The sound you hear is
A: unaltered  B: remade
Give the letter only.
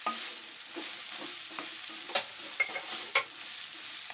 A